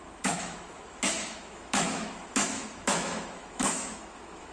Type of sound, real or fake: fake